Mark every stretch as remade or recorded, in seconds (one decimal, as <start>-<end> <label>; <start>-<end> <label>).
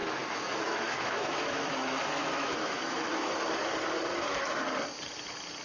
0.0-3.4 remade; 3.4-4.1 recorded; 4.1-4.6 remade; 4.6-5.6 recorded